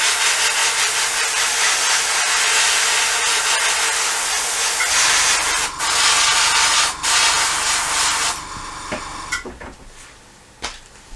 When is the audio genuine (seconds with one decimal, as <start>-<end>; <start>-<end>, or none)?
0.0-11.2